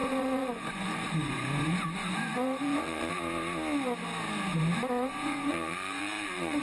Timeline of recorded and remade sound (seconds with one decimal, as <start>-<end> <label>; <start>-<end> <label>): 0.0-3.1 remade; 3.1-4.5 recorded; 4.5-6.6 remade